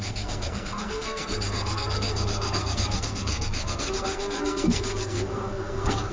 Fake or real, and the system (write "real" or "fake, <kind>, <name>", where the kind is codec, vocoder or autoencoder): fake, codec, SNAC